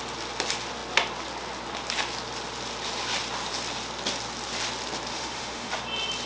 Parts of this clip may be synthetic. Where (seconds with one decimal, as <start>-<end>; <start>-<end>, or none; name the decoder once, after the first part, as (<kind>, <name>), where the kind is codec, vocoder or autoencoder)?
5.1-5.7 (autoencoder, DAC-VAE)